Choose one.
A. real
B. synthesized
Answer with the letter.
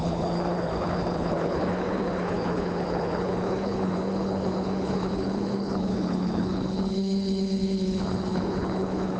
B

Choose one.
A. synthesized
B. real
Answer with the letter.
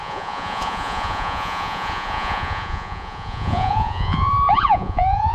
A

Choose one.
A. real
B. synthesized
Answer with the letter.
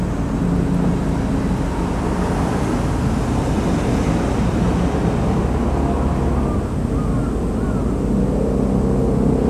A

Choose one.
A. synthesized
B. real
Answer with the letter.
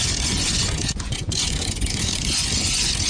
A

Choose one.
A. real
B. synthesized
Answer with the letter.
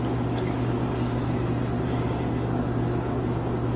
A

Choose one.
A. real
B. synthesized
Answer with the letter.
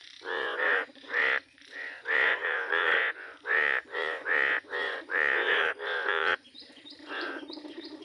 B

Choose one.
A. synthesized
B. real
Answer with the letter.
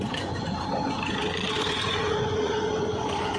A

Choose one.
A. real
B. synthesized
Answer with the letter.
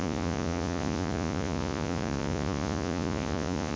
B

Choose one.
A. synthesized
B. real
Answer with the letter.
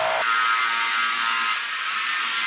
B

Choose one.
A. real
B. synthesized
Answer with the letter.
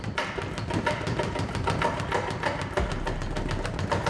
A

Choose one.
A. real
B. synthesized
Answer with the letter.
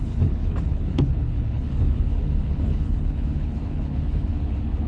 B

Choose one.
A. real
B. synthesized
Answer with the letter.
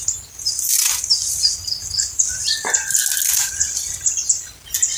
A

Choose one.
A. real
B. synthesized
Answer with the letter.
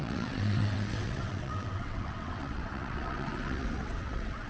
B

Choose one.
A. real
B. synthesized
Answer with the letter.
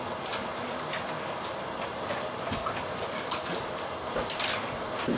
A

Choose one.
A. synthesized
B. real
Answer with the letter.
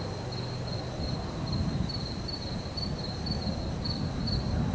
B